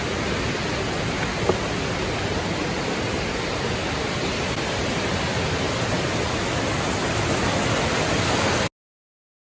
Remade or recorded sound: recorded